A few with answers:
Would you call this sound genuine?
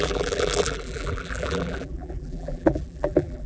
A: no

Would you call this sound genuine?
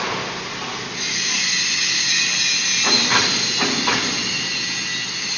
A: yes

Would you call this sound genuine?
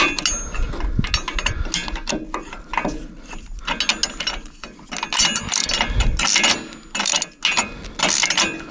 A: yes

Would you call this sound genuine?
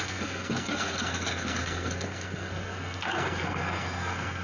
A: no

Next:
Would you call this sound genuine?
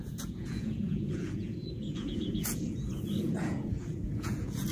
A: no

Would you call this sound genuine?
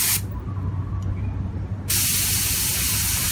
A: yes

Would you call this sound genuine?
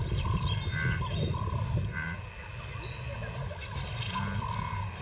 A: yes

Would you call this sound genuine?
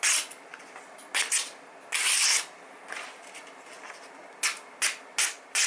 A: yes